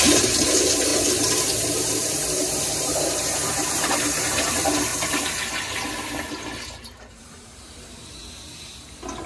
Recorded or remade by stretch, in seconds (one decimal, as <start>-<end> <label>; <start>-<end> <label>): 0.0-0.9 remade; 0.9-2.6 recorded; 2.6-4.9 remade; 4.9-7.1 recorded; 7.1-8.2 remade; 8.2-9.3 recorded